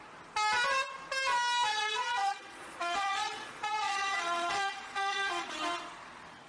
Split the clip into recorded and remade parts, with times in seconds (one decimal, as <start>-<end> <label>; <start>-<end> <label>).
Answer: 0.0-1.7 recorded; 1.7-5.6 remade; 5.6-6.5 recorded